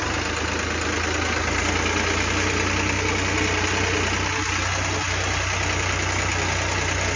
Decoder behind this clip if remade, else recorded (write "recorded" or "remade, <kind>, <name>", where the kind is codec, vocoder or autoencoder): recorded